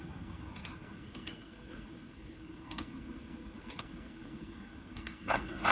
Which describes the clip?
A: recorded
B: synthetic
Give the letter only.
B